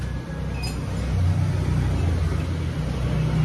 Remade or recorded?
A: recorded